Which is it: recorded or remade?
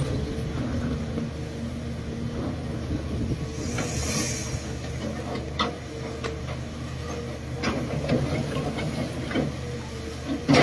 recorded